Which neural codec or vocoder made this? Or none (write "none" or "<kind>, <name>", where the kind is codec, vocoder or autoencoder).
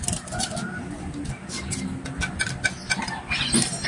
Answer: none